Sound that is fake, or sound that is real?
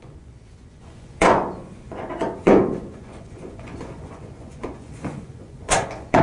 fake